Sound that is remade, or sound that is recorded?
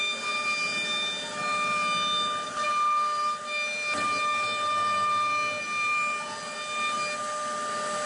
recorded